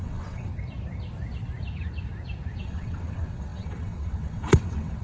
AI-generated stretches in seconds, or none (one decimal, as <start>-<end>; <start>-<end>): 0.0-0.5; 2.6-5.0